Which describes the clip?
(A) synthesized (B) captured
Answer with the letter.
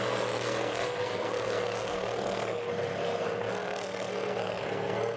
A